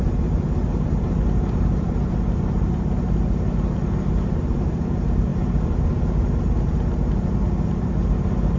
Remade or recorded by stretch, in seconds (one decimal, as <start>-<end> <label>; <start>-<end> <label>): 0.0-8.6 recorded

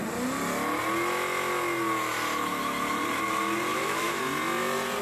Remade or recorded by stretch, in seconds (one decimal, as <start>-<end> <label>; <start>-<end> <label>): 0.0-3.7 recorded; 3.7-4.2 remade; 4.2-5.0 recorded

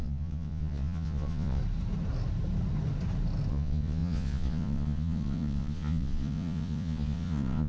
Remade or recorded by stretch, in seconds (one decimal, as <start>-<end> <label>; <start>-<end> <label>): 0.0-1.6 remade; 1.6-3.5 recorded; 3.5-7.7 remade

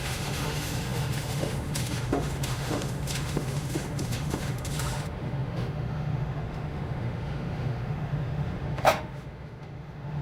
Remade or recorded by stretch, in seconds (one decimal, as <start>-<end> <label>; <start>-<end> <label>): 0.0-10.2 remade

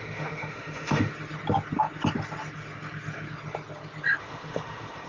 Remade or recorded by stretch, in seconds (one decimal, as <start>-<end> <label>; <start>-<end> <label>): 0.0-1.1 remade; 1.1-4.2 recorded; 4.2-5.1 remade

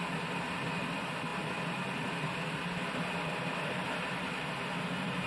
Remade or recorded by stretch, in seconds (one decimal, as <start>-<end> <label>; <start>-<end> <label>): 0.0-5.3 recorded

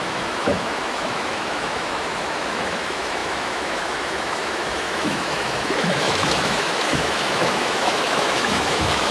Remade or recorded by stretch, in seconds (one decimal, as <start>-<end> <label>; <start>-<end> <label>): 0.0-9.1 remade

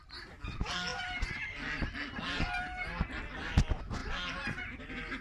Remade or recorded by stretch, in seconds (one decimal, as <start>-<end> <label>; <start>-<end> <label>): 0.0-5.2 recorded